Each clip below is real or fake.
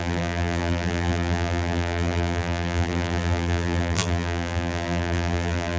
fake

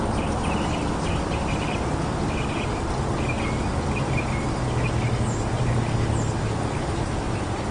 real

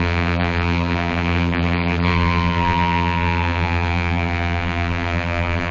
fake